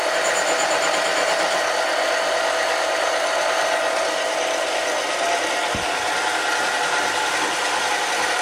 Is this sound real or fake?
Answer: real